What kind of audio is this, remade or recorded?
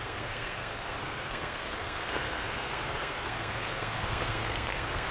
remade